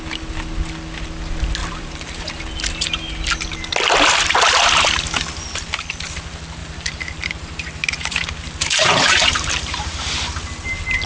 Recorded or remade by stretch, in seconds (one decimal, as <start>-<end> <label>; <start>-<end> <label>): 0.0-1.6 recorded; 1.6-2.4 remade; 2.4-6.6 recorded; 6.6-10.0 remade; 10.0-11.1 recorded